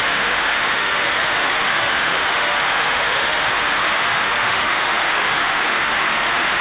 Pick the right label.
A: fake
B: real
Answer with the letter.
A